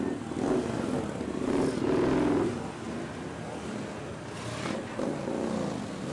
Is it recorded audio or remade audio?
recorded